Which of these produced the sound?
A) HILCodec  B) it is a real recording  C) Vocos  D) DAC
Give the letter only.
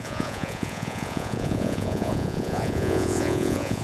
C